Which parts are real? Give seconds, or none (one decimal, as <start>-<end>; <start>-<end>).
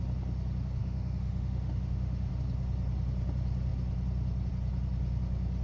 0.0-0.8; 2.3-5.6